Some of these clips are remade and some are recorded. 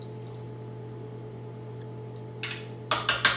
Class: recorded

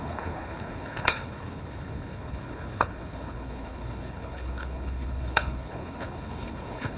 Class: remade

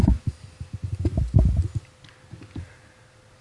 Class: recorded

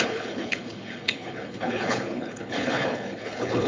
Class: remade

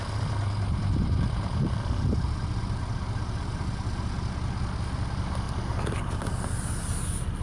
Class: recorded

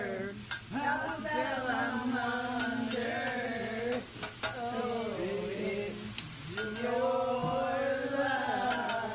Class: recorded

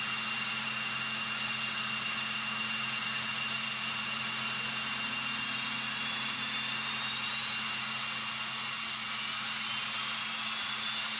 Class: recorded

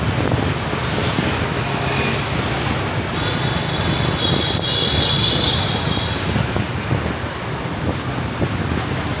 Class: recorded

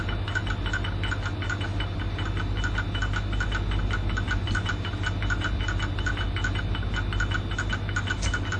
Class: recorded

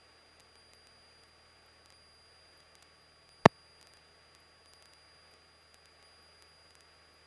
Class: recorded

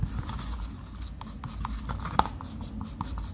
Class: recorded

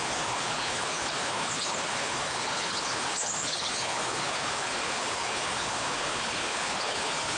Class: remade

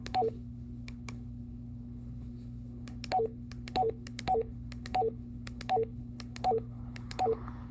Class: remade